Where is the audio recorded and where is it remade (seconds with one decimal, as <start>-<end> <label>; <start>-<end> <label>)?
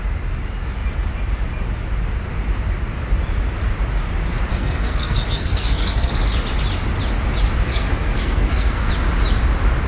0.0-4.5 recorded; 4.5-6.1 remade; 6.1-7.7 recorded; 7.7-8.9 remade; 8.9-9.9 recorded